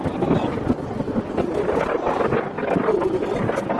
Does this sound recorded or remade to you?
recorded